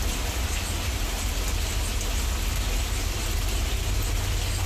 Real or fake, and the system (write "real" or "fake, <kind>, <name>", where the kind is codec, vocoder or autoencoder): real